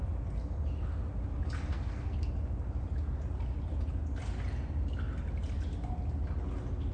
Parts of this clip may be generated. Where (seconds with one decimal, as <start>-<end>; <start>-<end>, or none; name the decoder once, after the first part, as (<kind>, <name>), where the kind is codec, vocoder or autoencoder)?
1.7-2.3 (codec, SNAC)